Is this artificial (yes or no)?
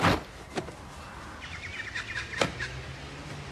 no